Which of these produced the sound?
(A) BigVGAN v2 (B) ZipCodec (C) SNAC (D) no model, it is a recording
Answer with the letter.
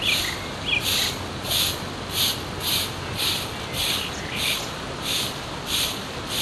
D